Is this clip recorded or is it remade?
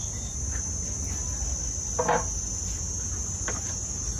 recorded